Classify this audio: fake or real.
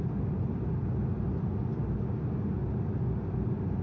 real